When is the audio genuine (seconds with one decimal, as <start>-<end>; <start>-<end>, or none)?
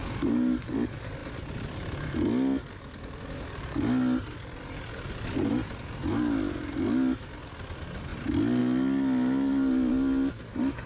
0.7-10.9